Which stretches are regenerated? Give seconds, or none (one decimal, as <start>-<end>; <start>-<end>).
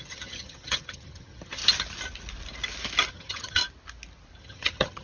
0.0-1.6; 3.1-3.6; 4.4-5.0